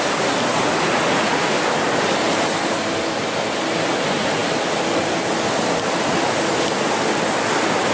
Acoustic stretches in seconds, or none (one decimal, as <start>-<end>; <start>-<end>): 0.0-7.9